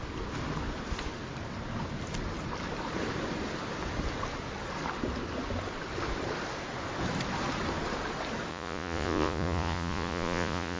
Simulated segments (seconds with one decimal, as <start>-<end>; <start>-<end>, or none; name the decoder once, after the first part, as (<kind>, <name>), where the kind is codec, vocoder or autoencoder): 8.5-10.8 (vocoder, Vocos)